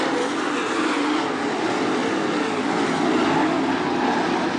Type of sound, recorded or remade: recorded